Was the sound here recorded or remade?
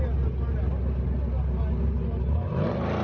recorded